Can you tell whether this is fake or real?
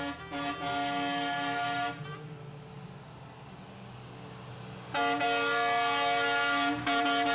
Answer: real